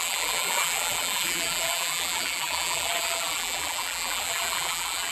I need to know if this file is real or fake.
fake